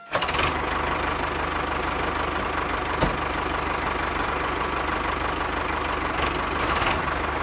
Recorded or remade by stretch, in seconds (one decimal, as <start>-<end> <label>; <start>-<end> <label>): 0.0-4.2 recorded; 4.2-4.8 remade; 4.8-7.4 recorded